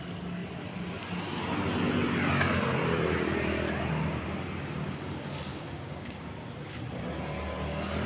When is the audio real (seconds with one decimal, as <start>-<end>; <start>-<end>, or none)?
0.0-5.5; 6.2-8.1